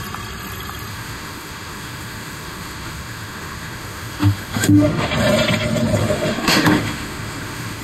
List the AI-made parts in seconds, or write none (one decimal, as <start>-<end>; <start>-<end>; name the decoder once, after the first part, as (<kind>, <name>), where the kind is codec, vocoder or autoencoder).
0.9-5.1 (autoencoder, DAC-VAE); 6.0-7.8